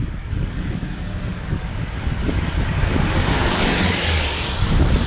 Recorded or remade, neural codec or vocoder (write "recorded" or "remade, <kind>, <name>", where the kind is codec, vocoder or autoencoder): remade, codec, DAC